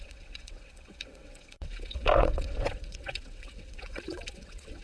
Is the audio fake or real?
fake